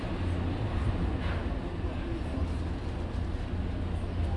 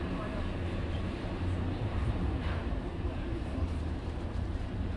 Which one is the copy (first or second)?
second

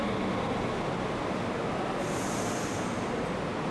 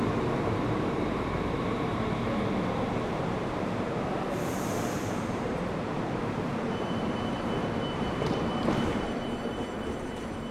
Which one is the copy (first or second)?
second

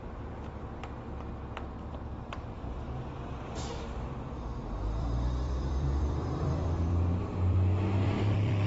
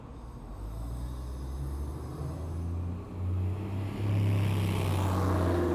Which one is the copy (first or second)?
first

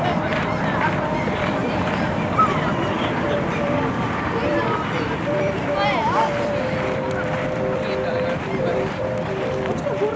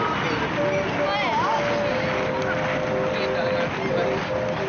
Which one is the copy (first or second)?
first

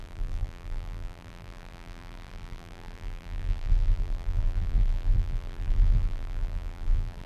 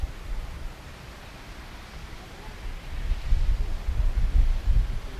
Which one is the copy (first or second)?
first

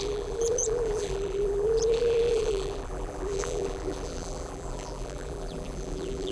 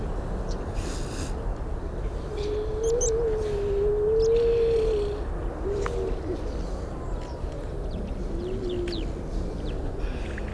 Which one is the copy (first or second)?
first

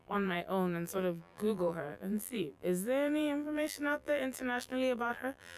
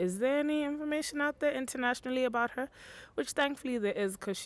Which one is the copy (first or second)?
first